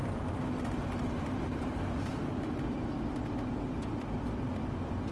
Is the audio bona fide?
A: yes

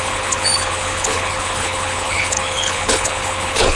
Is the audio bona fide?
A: no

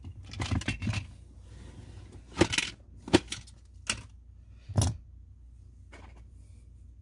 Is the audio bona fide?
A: yes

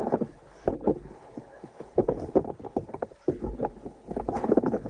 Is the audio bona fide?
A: no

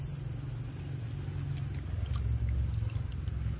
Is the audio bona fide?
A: yes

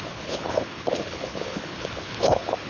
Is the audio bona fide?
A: no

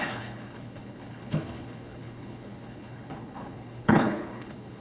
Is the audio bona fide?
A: no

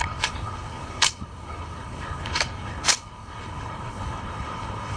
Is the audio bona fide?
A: no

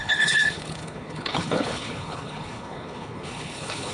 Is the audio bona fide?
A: no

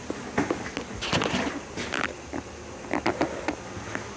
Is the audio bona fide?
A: yes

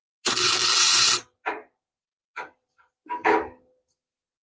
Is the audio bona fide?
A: yes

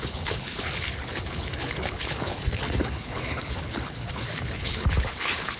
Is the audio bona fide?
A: no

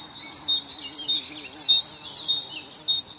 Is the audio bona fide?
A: yes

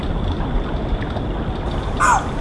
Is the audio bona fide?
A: yes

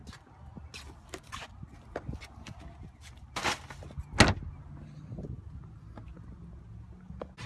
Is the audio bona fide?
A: yes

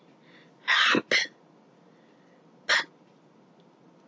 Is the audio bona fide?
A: yes